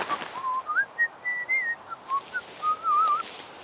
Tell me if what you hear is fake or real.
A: real